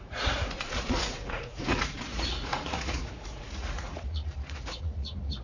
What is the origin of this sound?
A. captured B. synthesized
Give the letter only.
B